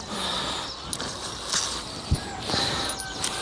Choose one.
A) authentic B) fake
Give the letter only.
A